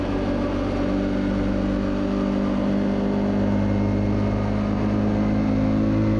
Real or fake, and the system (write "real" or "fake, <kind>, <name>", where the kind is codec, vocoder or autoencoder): real